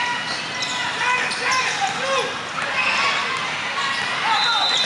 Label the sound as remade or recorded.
recorded